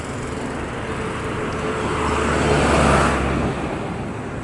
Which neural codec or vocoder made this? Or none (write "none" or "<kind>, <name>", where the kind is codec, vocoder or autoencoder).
none